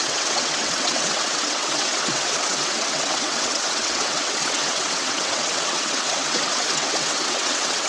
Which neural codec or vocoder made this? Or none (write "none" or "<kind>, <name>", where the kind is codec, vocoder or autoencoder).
vocoder, WaveNeXt